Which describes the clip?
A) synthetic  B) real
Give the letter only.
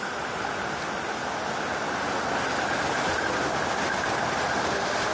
B